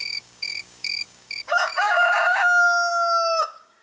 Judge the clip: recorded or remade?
remade